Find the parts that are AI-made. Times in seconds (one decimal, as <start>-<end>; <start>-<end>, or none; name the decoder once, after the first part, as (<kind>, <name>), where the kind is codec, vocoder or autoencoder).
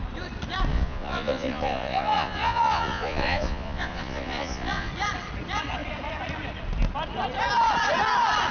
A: 0.7-4.9 (vocoder, Vocos)